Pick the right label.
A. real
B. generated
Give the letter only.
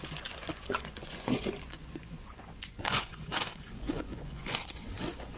B